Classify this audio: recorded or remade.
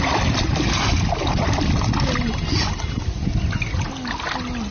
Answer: recorded